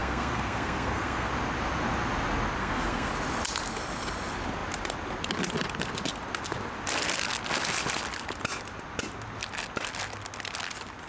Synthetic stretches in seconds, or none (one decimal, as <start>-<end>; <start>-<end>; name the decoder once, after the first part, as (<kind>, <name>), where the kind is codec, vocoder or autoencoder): 0.0-1.3 (codec, SNAC); 2.6-3.1